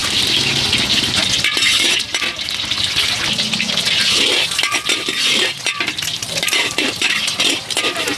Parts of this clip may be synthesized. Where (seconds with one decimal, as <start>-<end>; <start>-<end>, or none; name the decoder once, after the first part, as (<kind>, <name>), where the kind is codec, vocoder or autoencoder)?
none